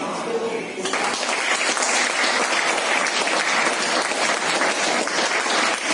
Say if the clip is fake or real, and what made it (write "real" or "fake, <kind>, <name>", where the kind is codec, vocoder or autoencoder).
real